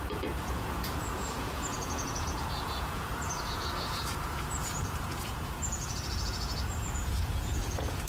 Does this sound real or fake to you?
fake